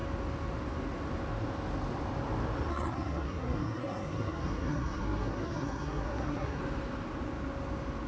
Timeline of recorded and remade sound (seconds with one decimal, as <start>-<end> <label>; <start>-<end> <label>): 0.0-2.7 recorded; 2.7-6.6 remade; 6.6-8.1 recorded